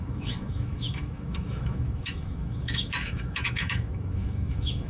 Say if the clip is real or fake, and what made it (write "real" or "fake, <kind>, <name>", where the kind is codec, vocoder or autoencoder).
fake, autoencoder, DAC-VAE